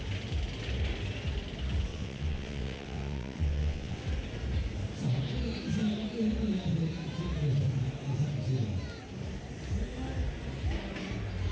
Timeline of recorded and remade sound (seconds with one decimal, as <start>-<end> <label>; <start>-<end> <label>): 0.0-1.9 recorded; 1.9-4.0 remade; 4.0-11.5 recorded